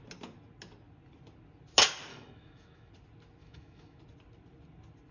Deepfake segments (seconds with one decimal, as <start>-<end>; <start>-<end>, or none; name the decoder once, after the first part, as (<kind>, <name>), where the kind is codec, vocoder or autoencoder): 2.1-2.9 (autoencoder, DAC-VAE); 3.4-4.0